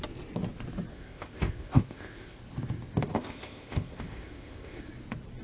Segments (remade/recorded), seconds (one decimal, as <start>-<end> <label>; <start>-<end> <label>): 0.0-0.9 recorded; 0.9-2.4 remade; 2.4-3.1 recorded; 3.1-4.8 remade; 4.8-5.4 recorded